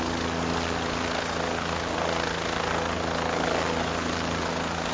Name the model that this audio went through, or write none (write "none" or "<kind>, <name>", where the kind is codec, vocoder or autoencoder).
none